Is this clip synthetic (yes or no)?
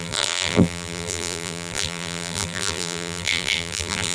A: yes